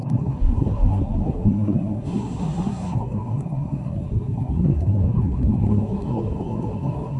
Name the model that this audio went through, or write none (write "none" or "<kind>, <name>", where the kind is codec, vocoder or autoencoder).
codec, SNAC